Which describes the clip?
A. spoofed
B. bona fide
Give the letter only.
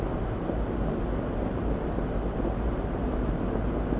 B